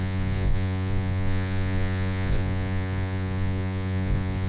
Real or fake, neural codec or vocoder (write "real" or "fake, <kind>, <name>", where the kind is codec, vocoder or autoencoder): fake, vocoder, Vocos